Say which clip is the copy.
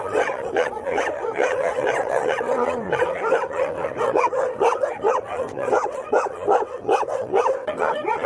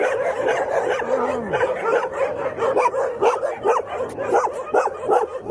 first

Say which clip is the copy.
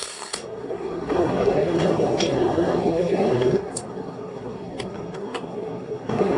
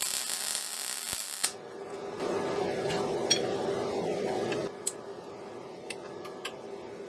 first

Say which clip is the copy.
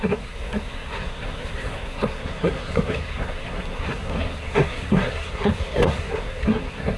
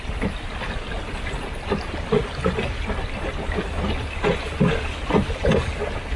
first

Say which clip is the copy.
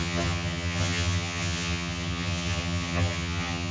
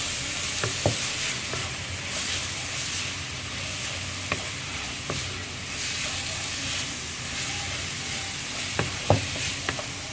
first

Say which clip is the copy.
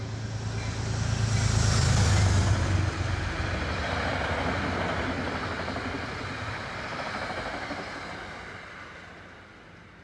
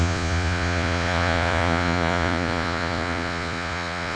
second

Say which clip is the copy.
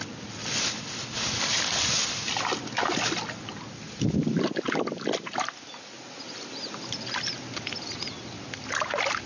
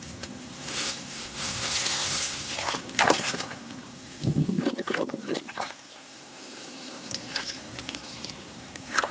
second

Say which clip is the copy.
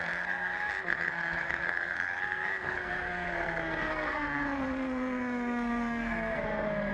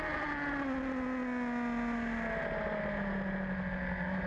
first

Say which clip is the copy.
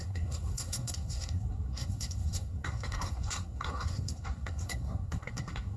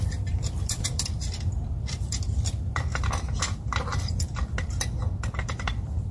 first